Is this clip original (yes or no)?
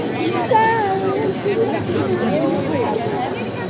yes